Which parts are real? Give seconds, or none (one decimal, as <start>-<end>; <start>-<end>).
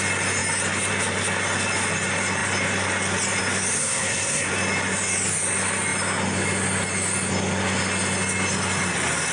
0.0-3.8; 4.5-9.3